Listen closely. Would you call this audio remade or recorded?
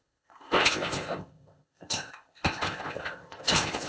remade